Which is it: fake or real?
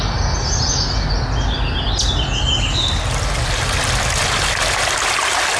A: real